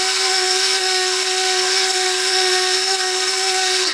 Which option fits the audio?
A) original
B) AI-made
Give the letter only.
B